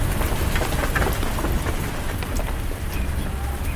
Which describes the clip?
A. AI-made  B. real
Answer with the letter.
B